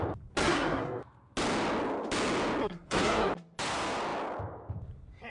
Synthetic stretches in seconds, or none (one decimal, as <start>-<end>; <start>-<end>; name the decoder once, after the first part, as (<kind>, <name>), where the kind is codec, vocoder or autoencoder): 0.4-1.0 (codec, SNAC); 2.6-3.3